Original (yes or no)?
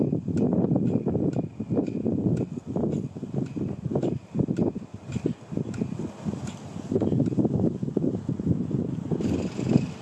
yes